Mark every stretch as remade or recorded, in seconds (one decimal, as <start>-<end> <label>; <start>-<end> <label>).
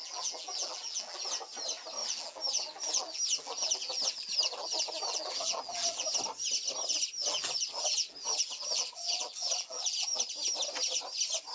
0.0-1.2 remade; 1.2-2.0 recorded; 2.0-6.1 remade; 6.1-7.2 recorded; 7.2-10.2 remade; 10.2-11.5 recorded